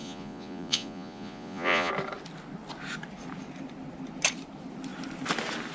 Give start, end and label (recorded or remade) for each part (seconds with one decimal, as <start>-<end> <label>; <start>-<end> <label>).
0.0-1.9 remade; 1.9-5.7 recorded